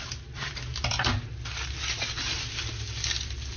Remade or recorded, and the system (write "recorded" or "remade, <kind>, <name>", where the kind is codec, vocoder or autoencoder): recorded